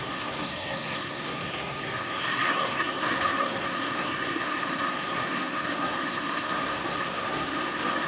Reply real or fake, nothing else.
fake